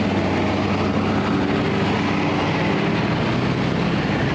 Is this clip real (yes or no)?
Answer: yes